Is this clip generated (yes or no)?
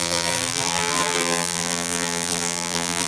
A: yes